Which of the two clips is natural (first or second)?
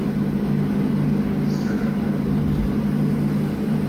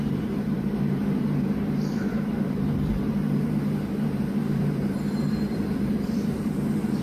first